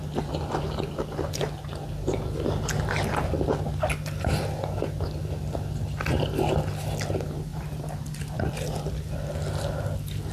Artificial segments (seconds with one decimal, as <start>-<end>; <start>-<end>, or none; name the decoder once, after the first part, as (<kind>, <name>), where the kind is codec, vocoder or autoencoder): 7.5-10.3 (vocoder, BigVGAN v2)